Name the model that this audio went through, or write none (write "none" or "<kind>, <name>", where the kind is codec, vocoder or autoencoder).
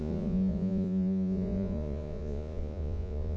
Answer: vocoder, Vocos